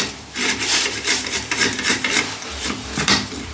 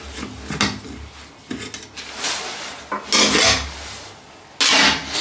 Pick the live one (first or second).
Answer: second